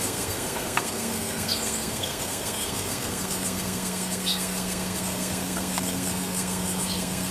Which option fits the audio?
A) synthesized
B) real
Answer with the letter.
A